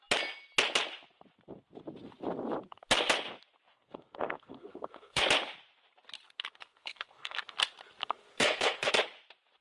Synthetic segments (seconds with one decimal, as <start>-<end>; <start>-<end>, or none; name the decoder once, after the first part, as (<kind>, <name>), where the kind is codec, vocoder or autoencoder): 3.7-5.2 (codec, SNAC); 6.7-7.4; 8.3-8.9